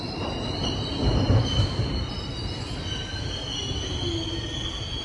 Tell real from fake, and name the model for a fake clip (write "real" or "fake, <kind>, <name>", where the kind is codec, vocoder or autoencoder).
real